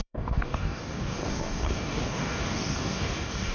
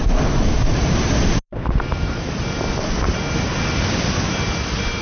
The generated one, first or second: first